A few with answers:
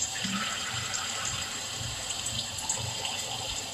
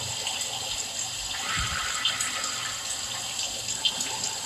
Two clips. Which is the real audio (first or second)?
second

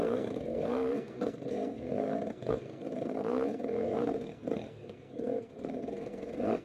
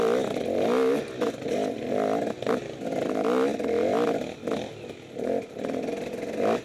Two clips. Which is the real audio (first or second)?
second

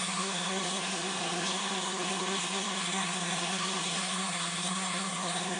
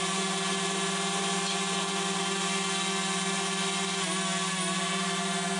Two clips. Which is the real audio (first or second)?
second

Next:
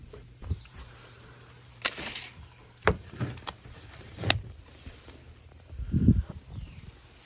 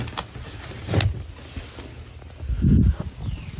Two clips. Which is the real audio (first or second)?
second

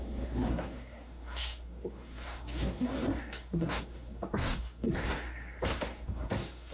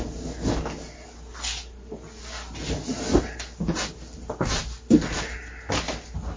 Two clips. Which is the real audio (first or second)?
second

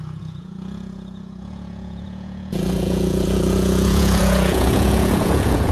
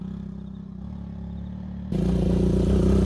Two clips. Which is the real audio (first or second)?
second